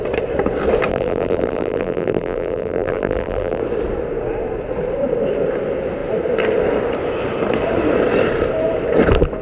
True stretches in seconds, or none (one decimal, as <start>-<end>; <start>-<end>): 0.0-0.9; 3.6-9.4